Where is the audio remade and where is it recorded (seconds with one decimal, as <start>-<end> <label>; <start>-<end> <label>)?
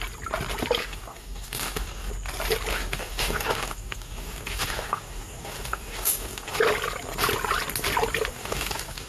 0.0-0.8 recorded; 0.8-2.1 remade; 2.1-2.7 recorded; 2.7-6.6 remade; 6.6-8.3 recorded; 8.3-9.1 remade